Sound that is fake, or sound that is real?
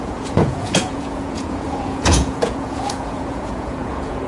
fake